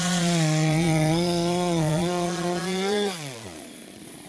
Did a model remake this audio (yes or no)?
yes